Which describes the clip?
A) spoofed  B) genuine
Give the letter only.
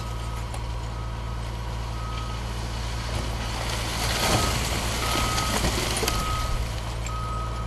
B